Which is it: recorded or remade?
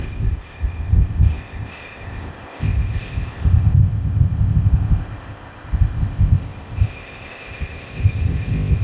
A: remade